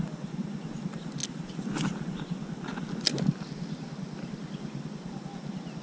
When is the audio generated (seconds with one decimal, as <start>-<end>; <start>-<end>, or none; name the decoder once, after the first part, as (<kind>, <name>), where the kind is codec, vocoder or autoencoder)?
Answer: none